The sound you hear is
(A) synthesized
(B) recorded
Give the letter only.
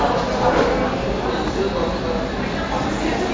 B